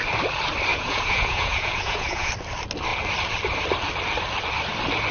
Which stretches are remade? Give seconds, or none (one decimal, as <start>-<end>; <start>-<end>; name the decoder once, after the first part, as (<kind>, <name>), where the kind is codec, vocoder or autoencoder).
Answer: 0.7-2.3 (vocoder, Vocos)